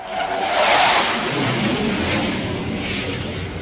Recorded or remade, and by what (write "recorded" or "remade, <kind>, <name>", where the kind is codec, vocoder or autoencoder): recorded